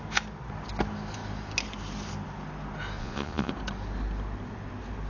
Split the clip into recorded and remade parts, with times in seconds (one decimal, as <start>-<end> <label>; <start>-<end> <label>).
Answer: 0.0-3.0 recorded; 3.0-3.5 remade; 3.5-5.1 recorded